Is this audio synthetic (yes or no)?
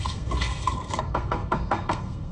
yes